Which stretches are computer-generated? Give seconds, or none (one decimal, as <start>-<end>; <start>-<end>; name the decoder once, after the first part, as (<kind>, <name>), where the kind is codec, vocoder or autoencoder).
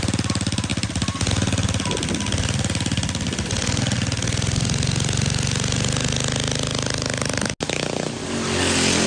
none